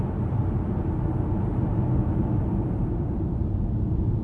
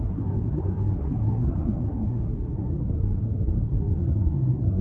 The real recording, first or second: first